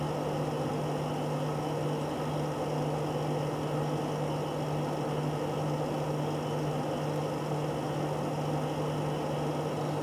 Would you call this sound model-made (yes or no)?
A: no